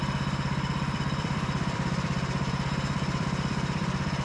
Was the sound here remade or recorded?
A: remade